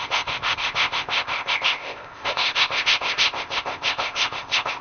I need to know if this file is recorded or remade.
remade